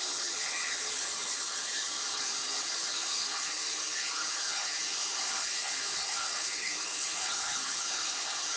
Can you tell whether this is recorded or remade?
remade